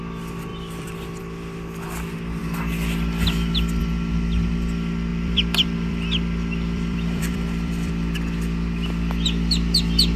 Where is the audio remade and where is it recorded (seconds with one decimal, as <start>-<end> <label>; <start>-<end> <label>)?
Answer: 0.0-0.5 recorded; 0.5-1.2 remade; 1.2-5.1 recorded; 5.1-7.9 remade; 7.9-10.2 recorded